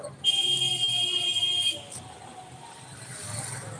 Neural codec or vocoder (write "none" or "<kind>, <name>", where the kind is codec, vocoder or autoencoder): none